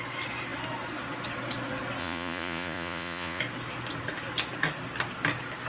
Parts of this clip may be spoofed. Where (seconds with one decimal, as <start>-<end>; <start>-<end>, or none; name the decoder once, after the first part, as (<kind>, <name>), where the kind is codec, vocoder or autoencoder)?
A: 2.0-3.4 (vocoder, Vocos)